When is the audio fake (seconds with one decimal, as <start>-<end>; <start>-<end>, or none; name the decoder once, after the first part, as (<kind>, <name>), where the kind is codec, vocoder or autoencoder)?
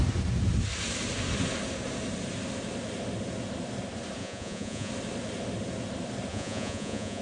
4.2-4.9 (vocoder, Vocos); 6.3-7.2